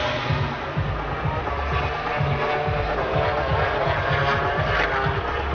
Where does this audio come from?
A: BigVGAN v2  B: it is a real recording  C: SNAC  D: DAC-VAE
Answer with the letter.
B